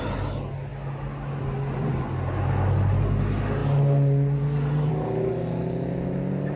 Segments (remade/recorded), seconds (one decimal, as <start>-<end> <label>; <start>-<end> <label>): 0.0-6.6 recorded